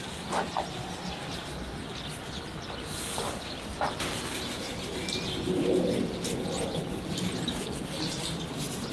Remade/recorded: recorded